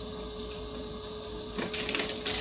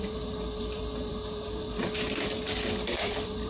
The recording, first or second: first